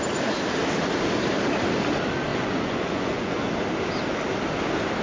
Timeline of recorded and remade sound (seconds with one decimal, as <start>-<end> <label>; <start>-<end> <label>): 0.0-2.3 recorded; 2.3-3.5 remade; 3.5-5.0 recorded